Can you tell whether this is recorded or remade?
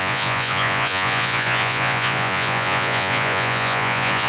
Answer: remade